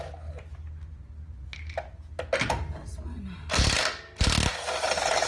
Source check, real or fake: real